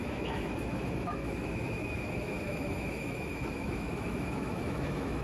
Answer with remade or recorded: remade